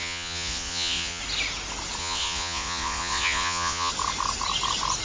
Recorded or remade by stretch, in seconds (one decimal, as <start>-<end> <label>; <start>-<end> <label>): 0.0-1.2 remade; 1.2-2.0 recorded; 2.0-3.9 remade; 3.9-5.0 recorded